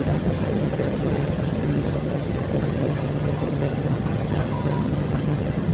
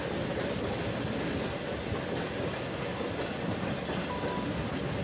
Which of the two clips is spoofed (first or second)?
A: first